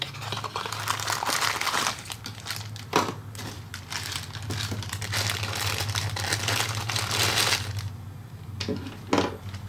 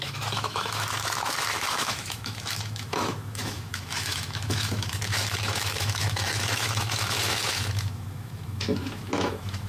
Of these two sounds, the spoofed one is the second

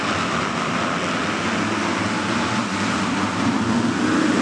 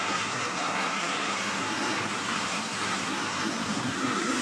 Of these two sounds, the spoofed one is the second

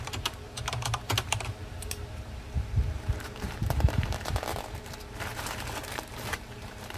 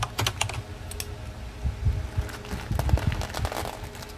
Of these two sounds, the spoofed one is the first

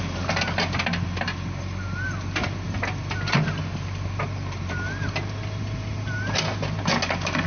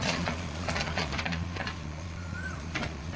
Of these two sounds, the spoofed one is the second